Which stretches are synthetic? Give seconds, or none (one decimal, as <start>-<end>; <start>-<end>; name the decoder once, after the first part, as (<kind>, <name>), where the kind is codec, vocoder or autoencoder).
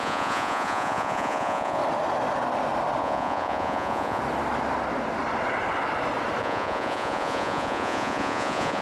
0.0-1.8 (vocoder, Vocos); 3.0-4.2; 6.4-8.8